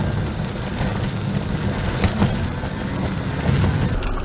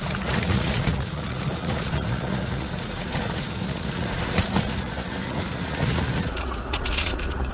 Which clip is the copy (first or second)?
second